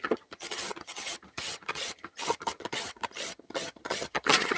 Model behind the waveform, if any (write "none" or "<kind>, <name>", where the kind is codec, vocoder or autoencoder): vocoder, HiFi-GAN